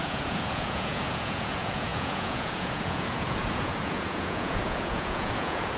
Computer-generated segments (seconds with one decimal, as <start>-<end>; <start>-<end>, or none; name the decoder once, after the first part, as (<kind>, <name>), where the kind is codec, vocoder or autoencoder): 0.0-5.8 (vocoder, Vocos)